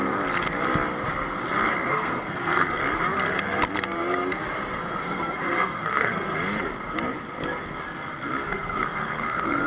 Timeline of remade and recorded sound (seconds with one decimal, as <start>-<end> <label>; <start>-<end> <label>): 0.0-1.9 recorded; 1.9-2.8 remade; 2.8-4.8 recorded; 4.8-6.3 remade; 6.3-8.5 recorded; 8.5-9.7 remade